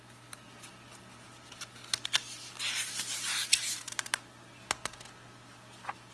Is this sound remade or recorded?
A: recorded